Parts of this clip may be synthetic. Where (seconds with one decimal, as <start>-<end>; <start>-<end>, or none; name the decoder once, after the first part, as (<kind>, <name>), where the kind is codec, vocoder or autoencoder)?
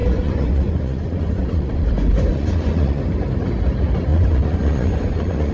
0.0-3.0 (vocoder, Vocos); 4.1-5.5